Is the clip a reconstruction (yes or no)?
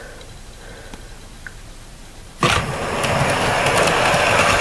no